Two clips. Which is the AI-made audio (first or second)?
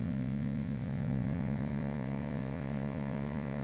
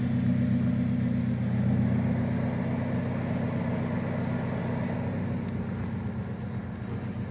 first